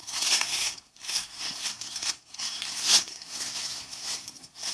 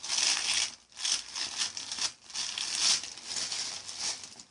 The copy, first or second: first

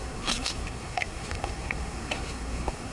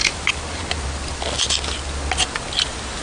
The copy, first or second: first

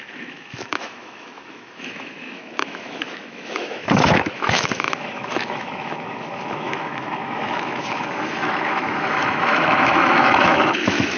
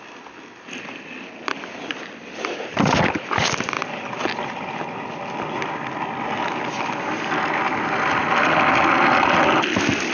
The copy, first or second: first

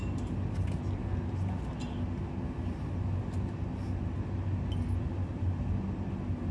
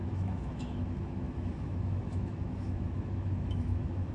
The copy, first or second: second